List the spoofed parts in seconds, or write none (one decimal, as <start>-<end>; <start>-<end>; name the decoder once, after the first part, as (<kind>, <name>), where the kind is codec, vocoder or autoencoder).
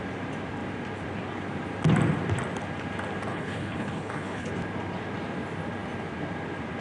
3.3-4.5 (codec, HILCodec)